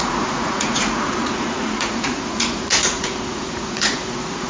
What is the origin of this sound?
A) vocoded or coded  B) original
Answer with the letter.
A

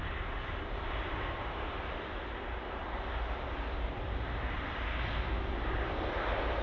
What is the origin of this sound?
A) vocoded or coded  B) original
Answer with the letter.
B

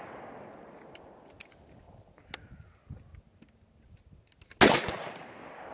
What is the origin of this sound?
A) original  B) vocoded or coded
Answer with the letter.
A